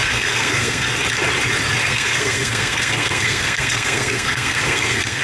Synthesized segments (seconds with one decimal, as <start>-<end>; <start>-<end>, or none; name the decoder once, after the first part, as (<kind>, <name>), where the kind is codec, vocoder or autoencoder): 0.0-0.9 (codec, SNAC); 1.8-5.2